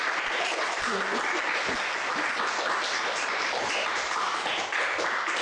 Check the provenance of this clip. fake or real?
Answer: real